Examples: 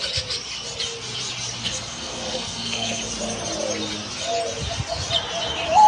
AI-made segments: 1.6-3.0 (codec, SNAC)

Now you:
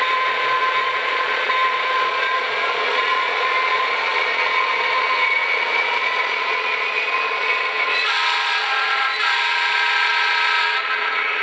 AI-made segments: 0.0-11.4 (vocoder, Vocos)

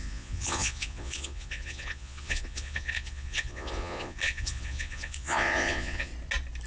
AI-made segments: 0.0-6.1 (vocoder, Vocos)

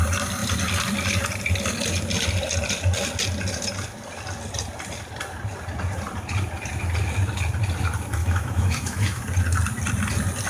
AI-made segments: 8.2-9.2 (autoencoder, DAC-VAE)

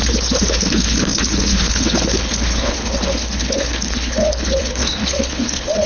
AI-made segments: 0.0-5.9 (codec, HILCodec)

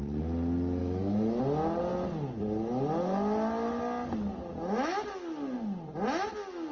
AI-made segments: 0.8-1.4 (autoencoder, DAC-VAE)